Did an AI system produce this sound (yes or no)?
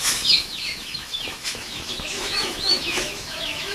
yes